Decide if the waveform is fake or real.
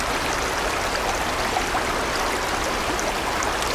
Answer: real